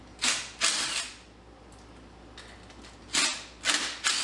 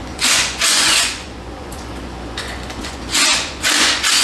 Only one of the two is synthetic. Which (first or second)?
second